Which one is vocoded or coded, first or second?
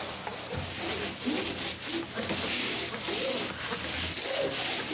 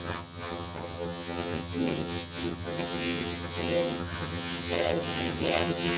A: second